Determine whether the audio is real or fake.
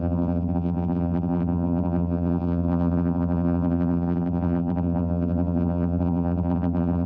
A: fake